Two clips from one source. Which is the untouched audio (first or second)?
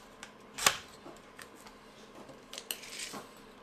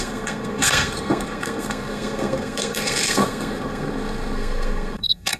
first